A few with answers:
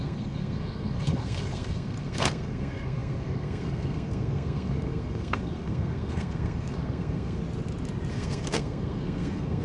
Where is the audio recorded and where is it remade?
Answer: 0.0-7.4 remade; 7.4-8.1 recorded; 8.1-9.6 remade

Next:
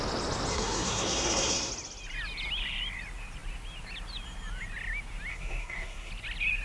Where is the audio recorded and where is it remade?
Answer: 0.0-0.5 recorded; 0.5-1.7 remade; 1.7-5.3 recorded; 5.3-6.1 remade; 6.1-6.6 recorded

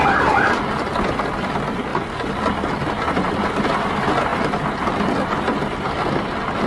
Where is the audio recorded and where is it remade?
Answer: 0.0-6.7 recorded

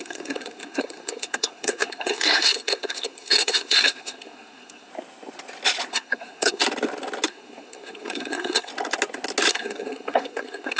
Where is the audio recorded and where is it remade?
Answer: 0.0-4.9 remade; 4.9-5.9 recorded; 5.9-6.6 remade; 6.6-7.3 recorded; 7.3-8.7 remade; 8.7-9.5 recorded; 9.5-10.8 remade

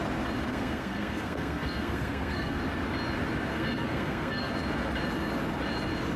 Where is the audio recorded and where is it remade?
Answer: 0.0-0.5 recorded; 0.5-2.6 remade; 2.6-3.5 recorded; 3.5-4.5 remade; 4.5-6.2 recorded

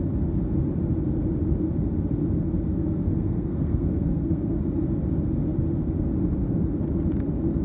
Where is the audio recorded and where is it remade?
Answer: 0.0-2.7 recorded; 2.7-4.6 remade; 4.6-7.6 recorded